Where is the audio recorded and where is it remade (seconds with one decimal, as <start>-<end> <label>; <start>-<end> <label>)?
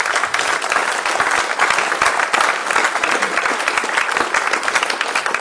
0.0-0.8 recorded; 0.8-1.4 remade; 1.4-5.4 recorded